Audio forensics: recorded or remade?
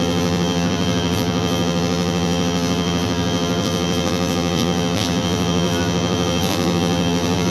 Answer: remade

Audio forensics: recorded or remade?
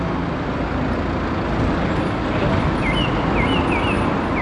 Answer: recorded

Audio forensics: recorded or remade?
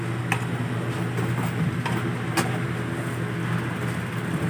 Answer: recorded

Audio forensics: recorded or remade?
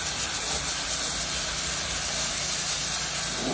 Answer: recorded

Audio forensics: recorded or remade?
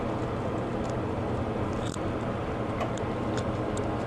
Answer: recorded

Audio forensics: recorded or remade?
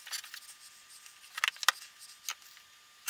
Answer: recorded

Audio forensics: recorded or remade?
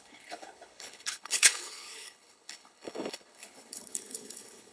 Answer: remade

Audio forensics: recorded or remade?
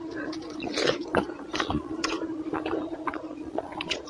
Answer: remade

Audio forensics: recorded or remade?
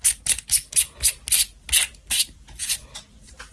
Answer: recorded